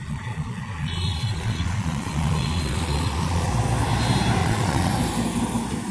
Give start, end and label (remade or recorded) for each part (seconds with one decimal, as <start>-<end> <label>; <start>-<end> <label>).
0.0-3.5 remade; 3.5-4.4 recorded; 4.4-4.9 remade; 4.9-5.9 recorded